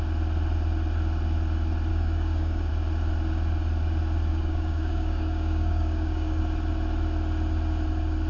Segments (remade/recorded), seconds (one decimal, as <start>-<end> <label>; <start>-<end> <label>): 0.0-1.9 recorded; 1.9-2.7 remade; 2.7-4.3 recorded; 4.3-6.4 remade; 6.4-8.3 recorded